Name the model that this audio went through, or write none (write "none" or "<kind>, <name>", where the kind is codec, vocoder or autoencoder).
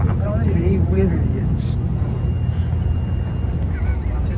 none